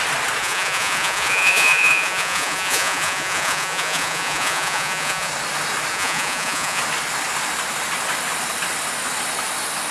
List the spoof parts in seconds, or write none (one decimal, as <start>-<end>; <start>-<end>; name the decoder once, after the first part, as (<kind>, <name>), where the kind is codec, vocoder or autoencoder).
0.4-5.3 (vocoder, Vocos); 5.9-6.8